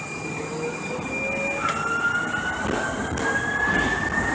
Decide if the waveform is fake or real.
real